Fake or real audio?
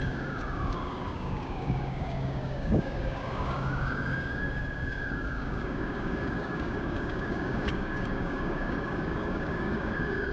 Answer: fake